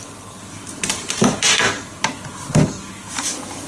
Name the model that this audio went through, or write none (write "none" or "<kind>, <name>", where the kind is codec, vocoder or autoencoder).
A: none